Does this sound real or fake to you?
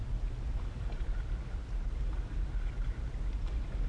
real